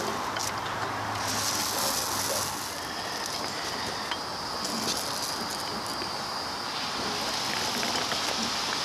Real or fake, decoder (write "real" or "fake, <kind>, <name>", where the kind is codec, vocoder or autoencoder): real